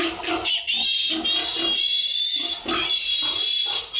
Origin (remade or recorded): recorded